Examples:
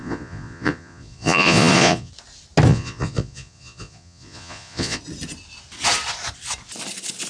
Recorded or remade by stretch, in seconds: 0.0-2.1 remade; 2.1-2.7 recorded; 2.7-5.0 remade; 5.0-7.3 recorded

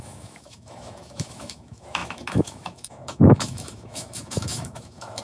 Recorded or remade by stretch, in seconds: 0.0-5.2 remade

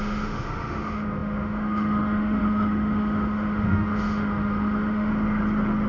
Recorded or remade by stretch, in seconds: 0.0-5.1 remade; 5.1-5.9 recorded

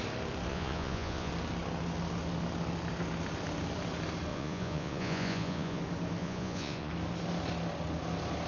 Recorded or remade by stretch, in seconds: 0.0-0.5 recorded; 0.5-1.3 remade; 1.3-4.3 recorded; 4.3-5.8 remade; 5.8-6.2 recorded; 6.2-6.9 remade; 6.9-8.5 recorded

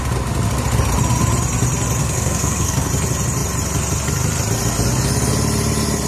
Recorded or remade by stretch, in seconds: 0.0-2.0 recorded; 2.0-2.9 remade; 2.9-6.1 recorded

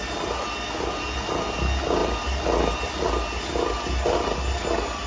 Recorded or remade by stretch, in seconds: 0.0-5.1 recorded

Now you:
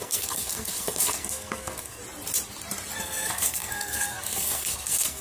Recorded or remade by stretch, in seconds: 0.0-2.0 remade; 2.0-3.0 recorded; 3.0-5.2 remade

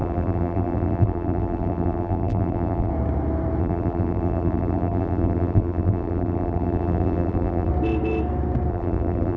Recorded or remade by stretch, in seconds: 0.0-2.9 remade; 2.9-3.6 recorded; 3.6-7.7 remade; 7.7-8.7 recorded; 8.7-9.4 remade